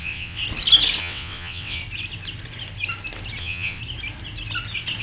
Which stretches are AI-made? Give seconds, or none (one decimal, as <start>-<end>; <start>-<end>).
0.0-0.4; 1.0-1.8; 3.4-3.8